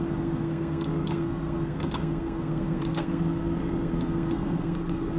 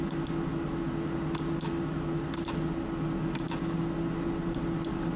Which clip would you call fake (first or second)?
first